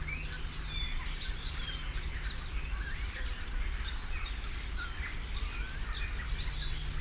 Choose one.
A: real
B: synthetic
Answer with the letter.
A